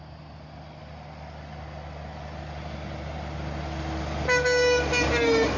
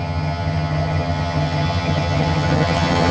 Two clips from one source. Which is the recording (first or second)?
first